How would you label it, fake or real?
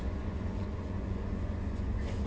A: fake